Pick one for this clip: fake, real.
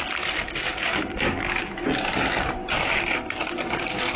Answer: real